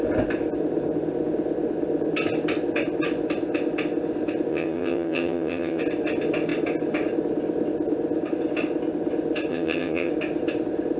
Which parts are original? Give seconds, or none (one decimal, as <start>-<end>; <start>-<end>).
0.0-4.5; 5.8-9.5; 10.1-11.0